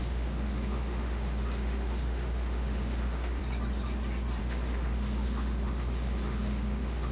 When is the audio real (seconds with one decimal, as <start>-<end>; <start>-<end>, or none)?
3.4-4.4